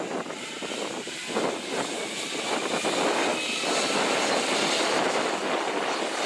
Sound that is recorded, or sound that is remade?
recorded